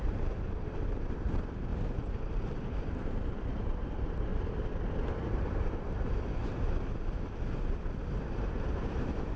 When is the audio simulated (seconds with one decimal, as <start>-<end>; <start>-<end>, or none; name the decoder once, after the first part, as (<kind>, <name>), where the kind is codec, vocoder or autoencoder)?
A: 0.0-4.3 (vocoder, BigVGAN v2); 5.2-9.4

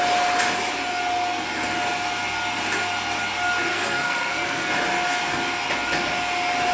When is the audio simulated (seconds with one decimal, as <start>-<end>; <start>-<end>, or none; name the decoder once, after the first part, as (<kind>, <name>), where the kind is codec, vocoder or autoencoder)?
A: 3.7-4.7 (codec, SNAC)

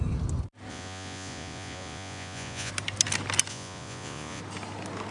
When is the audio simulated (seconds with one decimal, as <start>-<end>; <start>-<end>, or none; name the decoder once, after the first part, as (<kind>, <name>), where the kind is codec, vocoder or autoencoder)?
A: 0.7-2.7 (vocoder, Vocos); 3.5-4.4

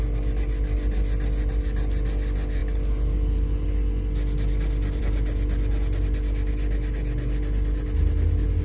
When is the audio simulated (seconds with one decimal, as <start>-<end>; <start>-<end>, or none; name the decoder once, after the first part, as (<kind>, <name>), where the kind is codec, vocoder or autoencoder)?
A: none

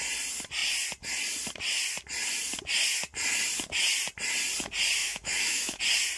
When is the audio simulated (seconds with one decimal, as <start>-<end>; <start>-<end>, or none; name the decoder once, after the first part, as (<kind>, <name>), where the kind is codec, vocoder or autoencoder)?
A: 5.0-5.8 (autoencoder, DAC-VAE)

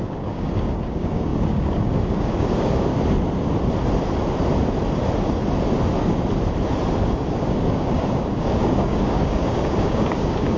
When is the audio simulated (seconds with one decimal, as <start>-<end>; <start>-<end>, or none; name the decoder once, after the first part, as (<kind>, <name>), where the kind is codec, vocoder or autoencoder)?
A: 0.0-2.9 (codec, DAC); 7.3-10.6